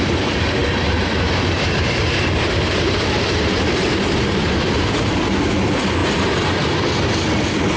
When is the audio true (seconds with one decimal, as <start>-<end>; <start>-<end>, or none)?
0.0-0.6; 5.3-6.0; 6.8-7.8